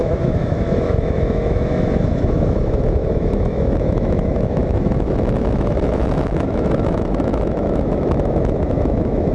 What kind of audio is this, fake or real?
fake